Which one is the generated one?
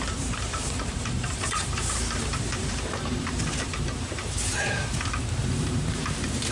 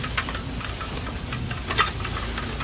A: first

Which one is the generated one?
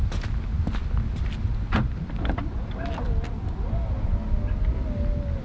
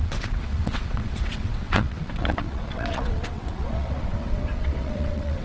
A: second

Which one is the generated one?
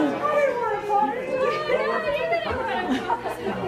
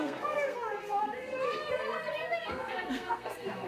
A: second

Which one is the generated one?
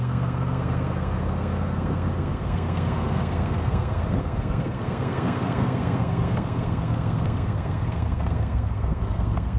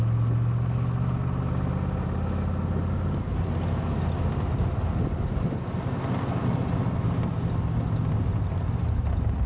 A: first